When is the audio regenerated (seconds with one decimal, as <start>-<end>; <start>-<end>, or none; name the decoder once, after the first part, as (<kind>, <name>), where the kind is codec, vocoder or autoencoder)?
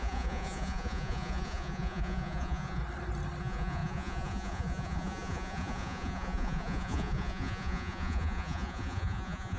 0.0-2.8 (vocoder, Vocos); 3.4-9.6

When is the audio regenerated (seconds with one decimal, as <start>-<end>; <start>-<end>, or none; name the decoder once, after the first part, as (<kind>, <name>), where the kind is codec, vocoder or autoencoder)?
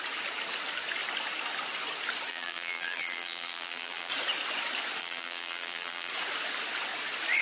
2.3-4.1 (vocoder, BigVGAN v2); 5.0-6.1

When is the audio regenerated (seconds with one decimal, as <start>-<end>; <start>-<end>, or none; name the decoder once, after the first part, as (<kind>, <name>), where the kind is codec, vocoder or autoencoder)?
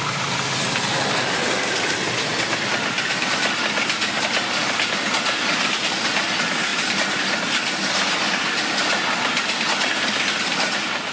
none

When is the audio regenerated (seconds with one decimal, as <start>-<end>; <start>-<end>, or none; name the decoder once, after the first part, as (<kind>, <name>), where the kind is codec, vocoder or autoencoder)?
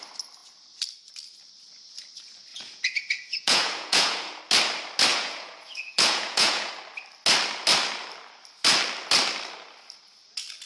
2.5-4.4 (vocoder, Vocos); 5.1-6.7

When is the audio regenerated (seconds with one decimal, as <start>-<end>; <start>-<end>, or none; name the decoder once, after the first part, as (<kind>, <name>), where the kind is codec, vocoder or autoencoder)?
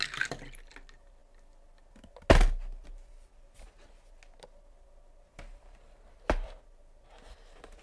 none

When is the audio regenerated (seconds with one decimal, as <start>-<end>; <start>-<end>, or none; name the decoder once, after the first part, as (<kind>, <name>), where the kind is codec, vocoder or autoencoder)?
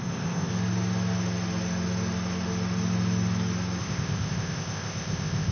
0.0-0.5 (codec, ZipCodec); 3.8-5.5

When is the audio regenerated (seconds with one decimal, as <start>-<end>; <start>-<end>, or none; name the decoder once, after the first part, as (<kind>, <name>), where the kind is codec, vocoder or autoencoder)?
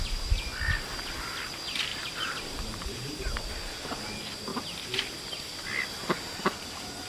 1.9-3.2 (vocoder, BigVGAN v2)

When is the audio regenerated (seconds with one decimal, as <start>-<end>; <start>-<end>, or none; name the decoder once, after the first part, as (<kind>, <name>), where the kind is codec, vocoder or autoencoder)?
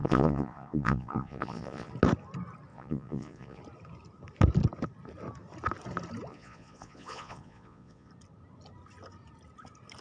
0.0-1.9 (vocoder, Vocos); 2.7-3.6; 6.3-8.1